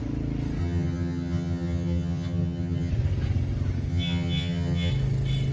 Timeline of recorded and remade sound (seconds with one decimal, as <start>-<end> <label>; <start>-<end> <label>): 0.0-0.6 recorded; 0.6-2.9 remade; 2.9-3.9 recorded; 3.9-4.9 remade; 4.9-5.5 recorded